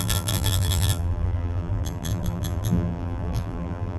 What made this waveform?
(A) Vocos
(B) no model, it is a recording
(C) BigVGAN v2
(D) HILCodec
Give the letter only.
C